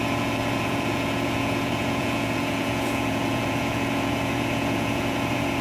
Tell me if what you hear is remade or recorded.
remade